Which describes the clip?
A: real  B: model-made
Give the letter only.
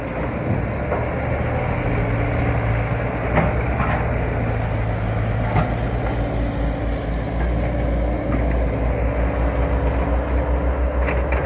A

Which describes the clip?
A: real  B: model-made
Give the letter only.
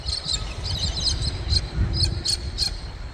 A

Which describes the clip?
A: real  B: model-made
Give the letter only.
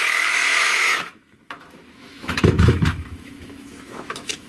B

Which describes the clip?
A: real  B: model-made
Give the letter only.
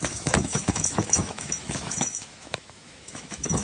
B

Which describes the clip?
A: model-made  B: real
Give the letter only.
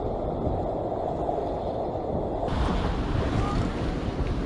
B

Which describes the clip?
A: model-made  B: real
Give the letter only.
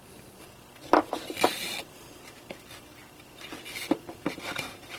B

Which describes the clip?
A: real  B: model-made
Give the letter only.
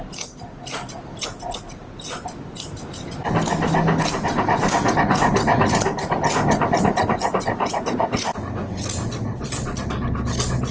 A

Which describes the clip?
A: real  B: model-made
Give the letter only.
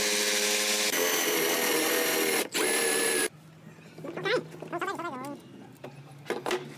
A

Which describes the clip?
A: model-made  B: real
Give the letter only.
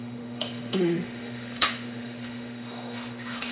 A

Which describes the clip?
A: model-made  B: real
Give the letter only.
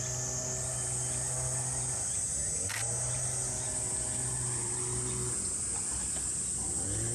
B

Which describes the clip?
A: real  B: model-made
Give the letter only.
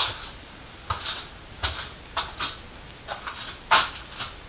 A